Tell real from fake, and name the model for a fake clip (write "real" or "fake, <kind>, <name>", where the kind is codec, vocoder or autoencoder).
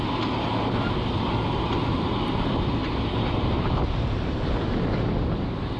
real